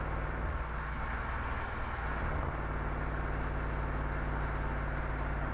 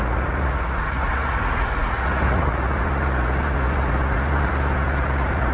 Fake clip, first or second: second